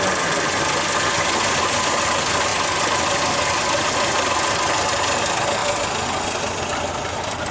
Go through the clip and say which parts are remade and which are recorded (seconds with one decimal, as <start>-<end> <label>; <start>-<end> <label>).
0.0-7.5 recorded

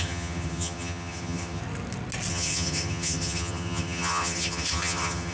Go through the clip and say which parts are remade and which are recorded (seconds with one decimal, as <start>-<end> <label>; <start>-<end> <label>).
0.0-1.6 remade; 1.6-2.3 recorded; 2.3-5.3 remade